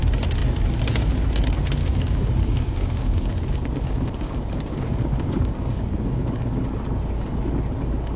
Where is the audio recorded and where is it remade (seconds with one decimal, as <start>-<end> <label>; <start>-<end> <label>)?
0.0-1.8 recorded; 1.8-6.6 remade; 6.6-8.2 recorded